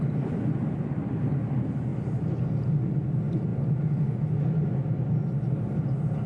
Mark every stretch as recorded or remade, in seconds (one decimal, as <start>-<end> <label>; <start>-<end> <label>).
0.0-6.3 recorded